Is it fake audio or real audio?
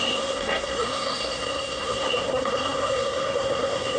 fake